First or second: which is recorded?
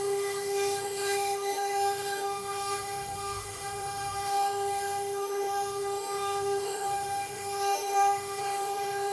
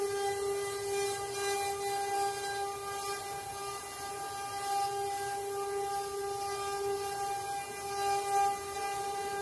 second